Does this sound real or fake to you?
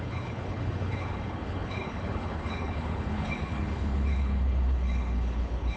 fake